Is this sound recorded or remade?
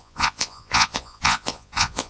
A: remade